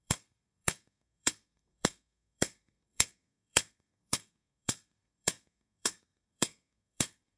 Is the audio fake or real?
fake